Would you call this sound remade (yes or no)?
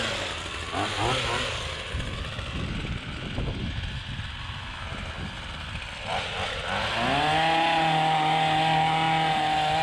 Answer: no